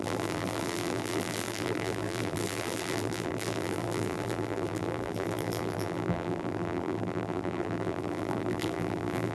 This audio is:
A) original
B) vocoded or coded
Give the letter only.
B